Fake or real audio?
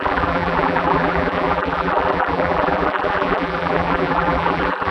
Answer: fake